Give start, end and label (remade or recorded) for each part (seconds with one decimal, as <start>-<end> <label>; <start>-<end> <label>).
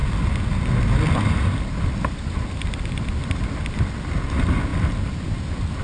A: 0.0-5.8 recorded